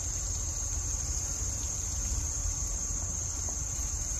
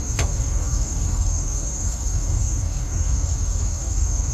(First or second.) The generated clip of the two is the second